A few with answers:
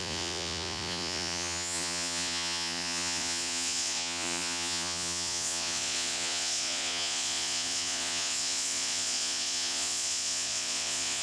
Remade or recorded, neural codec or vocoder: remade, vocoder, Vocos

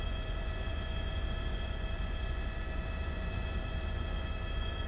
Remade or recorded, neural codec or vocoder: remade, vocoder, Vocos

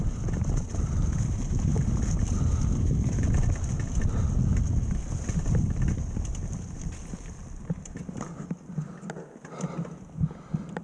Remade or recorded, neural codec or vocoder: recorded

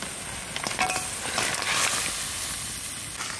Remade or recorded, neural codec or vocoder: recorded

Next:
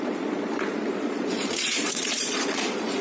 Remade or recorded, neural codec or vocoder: remade, vocoder, Vocos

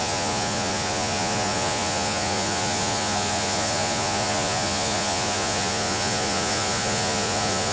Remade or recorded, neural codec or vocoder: remade, vocoder, Vocos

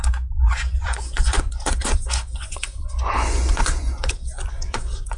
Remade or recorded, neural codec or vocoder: remade, vocoder, Vocos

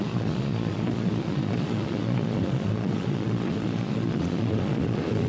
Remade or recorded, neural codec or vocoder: remade, vocoder, Vocos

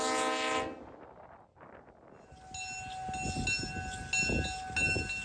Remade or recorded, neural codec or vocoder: recorded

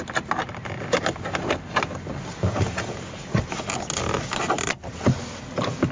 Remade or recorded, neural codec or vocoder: recorded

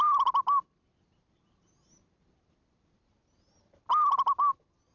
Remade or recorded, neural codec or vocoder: recorded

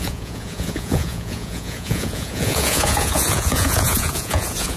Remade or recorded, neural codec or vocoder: remade, vocoder, Vocos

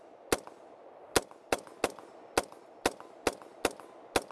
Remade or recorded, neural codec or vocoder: recorded